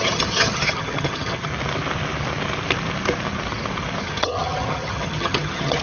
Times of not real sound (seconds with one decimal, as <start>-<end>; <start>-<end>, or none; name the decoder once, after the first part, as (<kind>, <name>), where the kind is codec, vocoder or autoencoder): 0.0-1.5 (vocoder, HiFi-GAN); 4.0-5.8